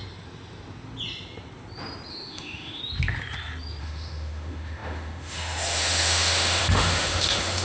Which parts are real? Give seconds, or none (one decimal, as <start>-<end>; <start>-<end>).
0.0-2.1; 2.8-3.8